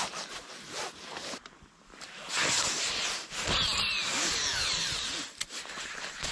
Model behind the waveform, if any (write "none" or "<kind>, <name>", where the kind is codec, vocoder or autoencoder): none